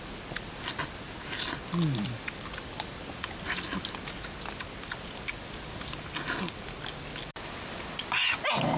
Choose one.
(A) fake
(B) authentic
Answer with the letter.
B